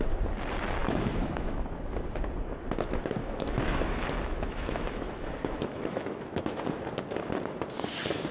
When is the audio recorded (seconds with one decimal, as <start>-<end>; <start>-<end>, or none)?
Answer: 0.0-0.8; 1.6-3.2; 6.6-8.3